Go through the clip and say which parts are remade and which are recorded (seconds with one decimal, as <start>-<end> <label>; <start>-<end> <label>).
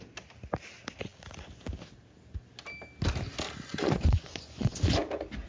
0.0-3.7 recorded; 3.7-4.8 remade; 4.8-5.5 recorded